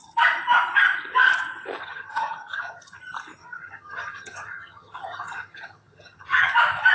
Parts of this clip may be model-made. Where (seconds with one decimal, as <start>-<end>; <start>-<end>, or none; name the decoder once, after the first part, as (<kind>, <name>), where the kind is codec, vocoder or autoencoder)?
1.8-3.0 (vocoder, HiFi-GAN); 3.4-6.5